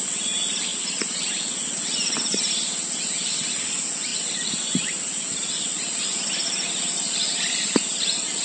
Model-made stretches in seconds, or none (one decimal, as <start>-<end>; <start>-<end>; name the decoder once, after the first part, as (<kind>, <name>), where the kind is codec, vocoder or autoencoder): 0.7-1.3 (vocoder, BigVGAN v2); 4.1-6.0; 7.3-8.0